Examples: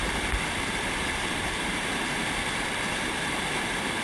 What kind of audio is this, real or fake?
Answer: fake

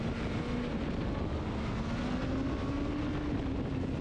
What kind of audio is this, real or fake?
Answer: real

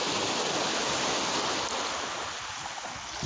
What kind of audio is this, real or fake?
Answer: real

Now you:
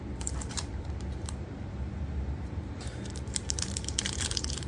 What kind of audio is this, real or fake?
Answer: fake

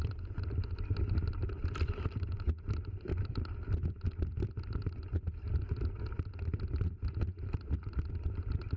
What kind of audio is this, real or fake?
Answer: fake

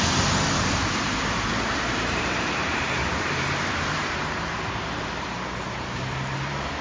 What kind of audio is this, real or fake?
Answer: fake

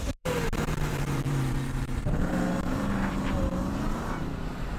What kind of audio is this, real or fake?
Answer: fake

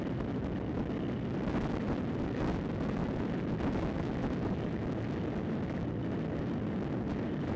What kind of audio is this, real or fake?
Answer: real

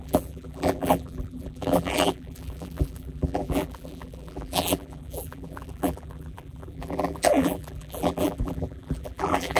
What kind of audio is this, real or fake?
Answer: fake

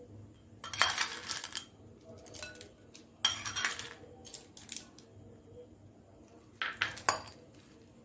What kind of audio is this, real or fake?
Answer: real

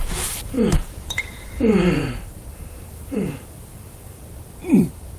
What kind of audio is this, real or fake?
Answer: fake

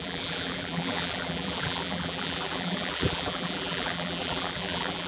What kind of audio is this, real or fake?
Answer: fake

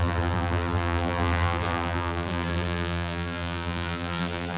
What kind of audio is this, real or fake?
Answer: fake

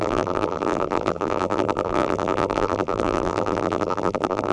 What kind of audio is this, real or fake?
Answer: fake